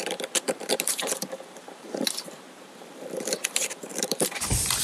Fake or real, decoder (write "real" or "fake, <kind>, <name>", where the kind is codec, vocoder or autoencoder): fake, vocoder, BigVGAN v2